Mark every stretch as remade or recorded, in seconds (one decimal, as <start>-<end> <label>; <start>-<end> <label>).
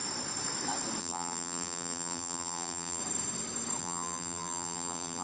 0.0-1.0 recorded; 1.0-3.0 remade; 3.0-3.8 recorded; 3.8-5.2 remade